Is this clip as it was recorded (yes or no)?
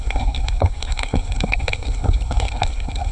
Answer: no